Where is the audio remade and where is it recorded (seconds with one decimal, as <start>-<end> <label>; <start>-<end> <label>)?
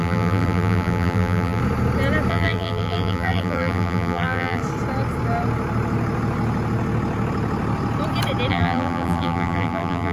0.0-1.6 remade; 1.6-2.3 recorded; 2.3-4.6 remade; 4.6-8.5 recorded; 8.5-10.1 remade